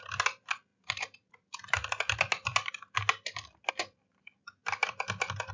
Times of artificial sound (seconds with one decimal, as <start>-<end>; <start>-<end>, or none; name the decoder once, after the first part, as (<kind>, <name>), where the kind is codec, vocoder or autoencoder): none